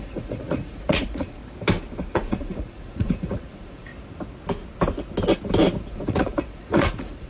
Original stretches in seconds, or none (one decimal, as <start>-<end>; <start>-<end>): 1.4-2.1; 3.9-5.8